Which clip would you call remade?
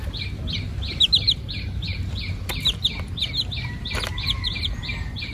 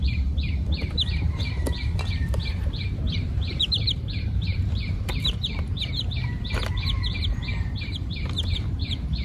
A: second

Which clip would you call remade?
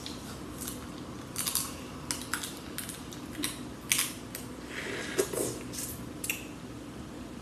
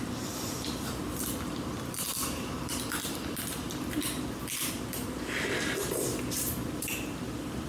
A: second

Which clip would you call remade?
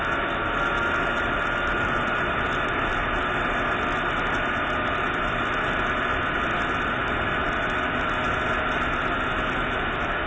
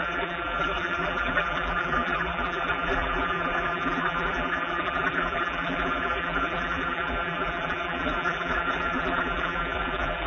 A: second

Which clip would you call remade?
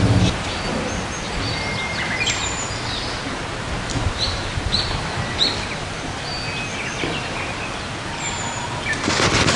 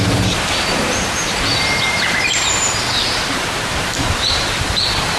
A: second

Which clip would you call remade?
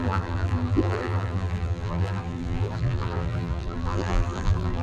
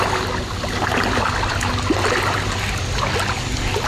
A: first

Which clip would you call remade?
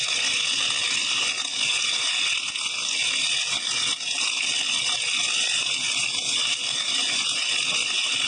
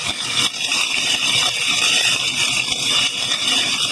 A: second